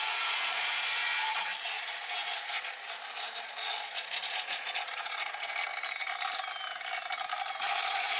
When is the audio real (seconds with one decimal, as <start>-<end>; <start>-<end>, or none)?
1.5-3.4; 5.5-7.6